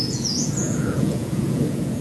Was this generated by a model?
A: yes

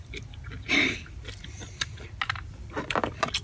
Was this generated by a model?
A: no